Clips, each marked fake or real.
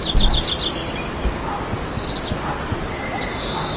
real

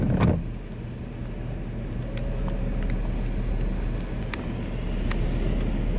real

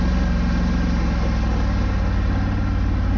real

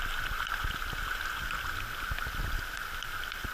real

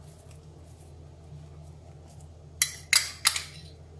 real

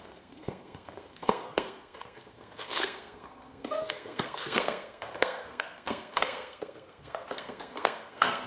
fake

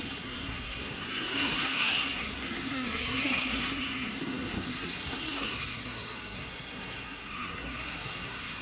fake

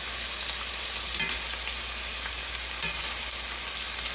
real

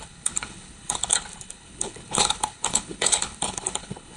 fake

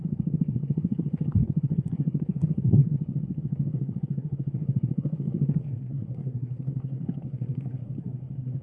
fake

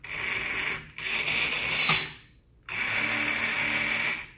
real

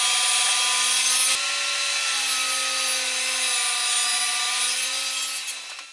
real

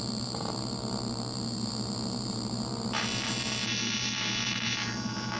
fake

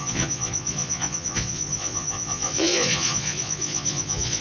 fake